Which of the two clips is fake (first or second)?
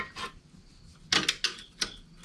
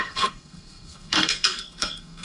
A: second